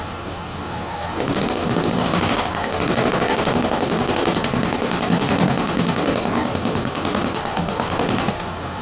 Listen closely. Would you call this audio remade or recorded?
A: remade